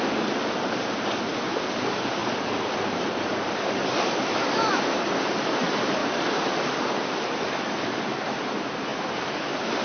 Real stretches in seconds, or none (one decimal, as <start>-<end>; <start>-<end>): 6.0-7.5

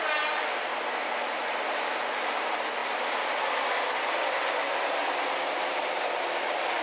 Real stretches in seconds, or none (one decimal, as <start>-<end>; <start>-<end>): 0.0-0.7; 1.2-6.8

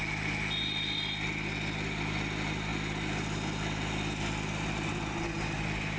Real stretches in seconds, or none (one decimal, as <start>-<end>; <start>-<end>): 0.0-6.0

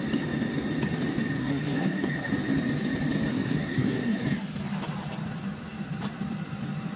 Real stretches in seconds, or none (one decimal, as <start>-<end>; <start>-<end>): 0.0-1.4; 2.3-3.3; 4.2-7.0

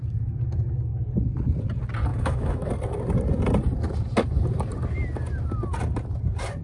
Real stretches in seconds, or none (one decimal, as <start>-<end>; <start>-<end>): 0.0-2.1; 2.7-6.6

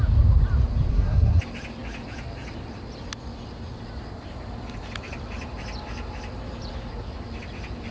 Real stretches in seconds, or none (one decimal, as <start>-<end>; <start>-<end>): 0.0-0.9; 1.4-7.9

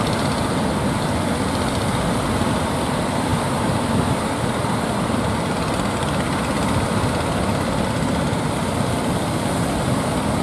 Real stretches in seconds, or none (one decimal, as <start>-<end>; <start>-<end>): 0.0-10.4